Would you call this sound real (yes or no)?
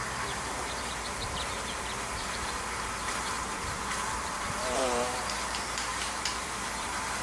no